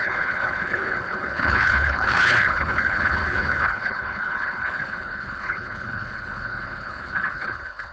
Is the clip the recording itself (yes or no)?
no